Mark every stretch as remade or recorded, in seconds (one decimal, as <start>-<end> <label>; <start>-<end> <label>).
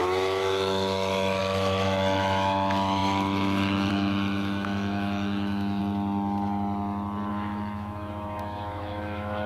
0.0-5.8 remade; 5.8-7.3 recorded; 7.3-9.5 remade